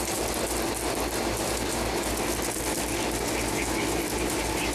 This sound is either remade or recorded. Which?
recorded